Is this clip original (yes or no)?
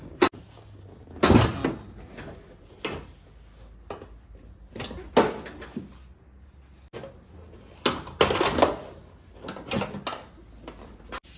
yes